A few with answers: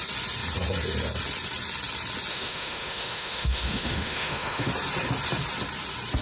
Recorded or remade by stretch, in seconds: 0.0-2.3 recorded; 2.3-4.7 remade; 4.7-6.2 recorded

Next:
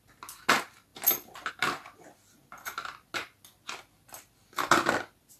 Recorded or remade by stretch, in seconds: 0.0-5.4 recorded

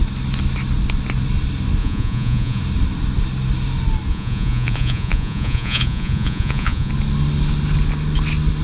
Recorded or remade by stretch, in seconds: 0.0-1.8 recorded; 1.8-2.6 remade; 2.6-4.1 recorded; 4.1-6.9 remade; 6.9-8.6 recorded

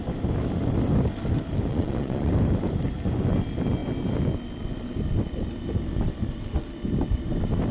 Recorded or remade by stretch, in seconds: 0.0-1.7 recorded; 1.7-2.3 remade; 2.3-7.7 recorded